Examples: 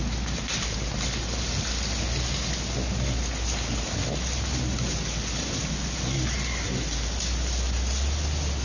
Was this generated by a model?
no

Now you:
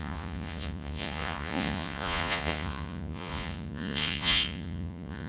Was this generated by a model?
yes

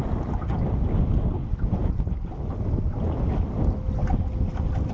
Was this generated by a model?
no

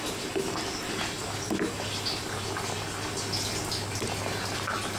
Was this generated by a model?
no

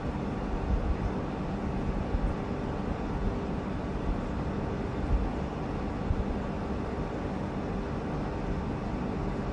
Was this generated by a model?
no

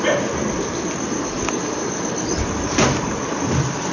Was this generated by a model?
no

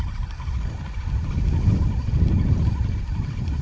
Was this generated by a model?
no